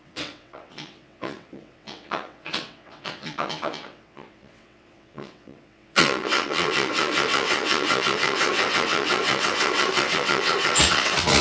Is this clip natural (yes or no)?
no